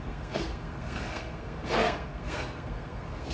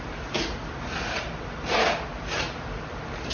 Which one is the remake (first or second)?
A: first